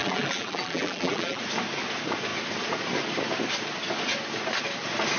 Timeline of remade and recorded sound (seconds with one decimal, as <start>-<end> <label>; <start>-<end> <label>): 0.0-1.4 remade; 1.4-5.2 recorded